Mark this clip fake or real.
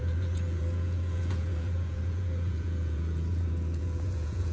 fake